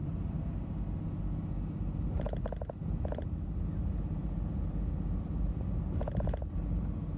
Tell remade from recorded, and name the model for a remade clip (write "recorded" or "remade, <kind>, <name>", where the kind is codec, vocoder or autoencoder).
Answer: recorded